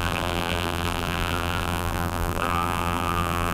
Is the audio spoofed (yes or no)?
yes